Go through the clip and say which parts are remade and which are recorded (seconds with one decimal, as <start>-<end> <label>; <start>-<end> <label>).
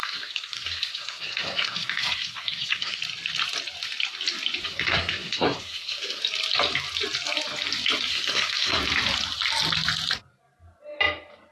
0.0-3.0 remade; 3.0-4.6 recorded; 4.6-6.2 remade; 6.2-8.1 recorded; 8.1-8.8 remade; 8.8-11.5 recorded